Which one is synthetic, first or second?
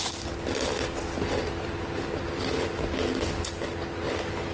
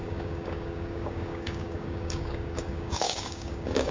second